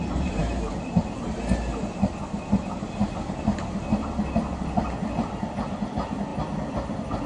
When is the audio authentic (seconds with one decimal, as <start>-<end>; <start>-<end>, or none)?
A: 0.0-7.3